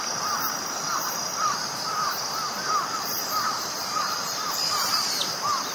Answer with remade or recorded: remade